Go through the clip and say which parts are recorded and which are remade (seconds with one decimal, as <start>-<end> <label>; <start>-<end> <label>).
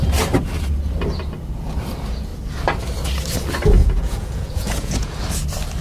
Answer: 0.0-3.8 recorded; 3.8-5.2 remade; 5.2-5.8 recorded